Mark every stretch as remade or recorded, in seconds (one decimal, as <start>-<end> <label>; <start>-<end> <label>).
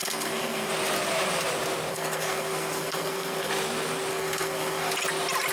0.0-0.7 remade; 0.7-1.9 recorded; 1.9-3.5 remade; 3.5-4.1 recorded; 4.1-4.9 remade; 4.9-5.5 recorded